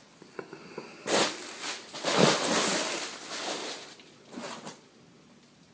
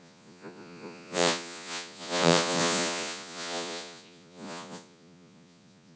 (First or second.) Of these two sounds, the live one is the first